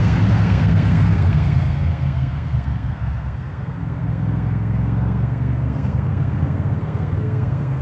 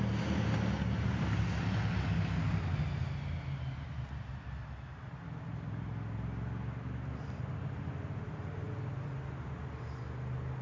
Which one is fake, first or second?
first